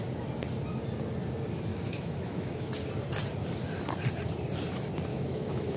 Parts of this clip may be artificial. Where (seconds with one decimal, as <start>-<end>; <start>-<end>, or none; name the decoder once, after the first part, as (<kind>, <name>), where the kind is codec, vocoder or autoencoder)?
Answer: 1.7-2.7 (autoencoder, DAC-VAE); 5.1-5.8